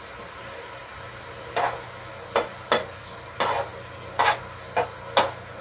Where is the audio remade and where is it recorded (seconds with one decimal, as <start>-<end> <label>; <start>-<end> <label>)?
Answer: 0.0-5.6 recorded